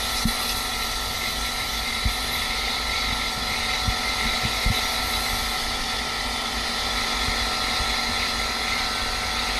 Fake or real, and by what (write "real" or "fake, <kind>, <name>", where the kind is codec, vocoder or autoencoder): real